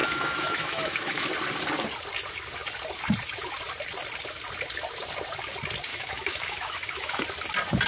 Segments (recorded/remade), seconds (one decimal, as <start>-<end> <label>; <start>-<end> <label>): 0.0-1.3 remade; 1.3-5.9 recorded; 5.9-7.2 remade; 7.2-7.9 recorded